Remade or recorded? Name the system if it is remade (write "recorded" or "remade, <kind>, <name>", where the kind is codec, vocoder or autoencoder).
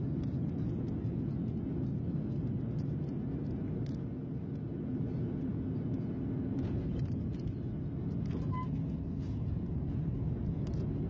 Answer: recorded